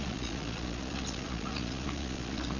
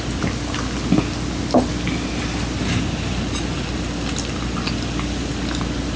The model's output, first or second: first